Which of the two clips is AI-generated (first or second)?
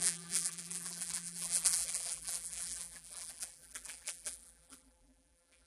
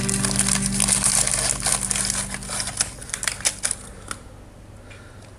first